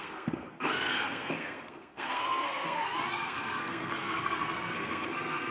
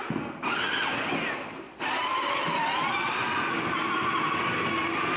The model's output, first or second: first